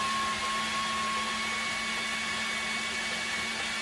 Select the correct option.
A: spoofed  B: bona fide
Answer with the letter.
B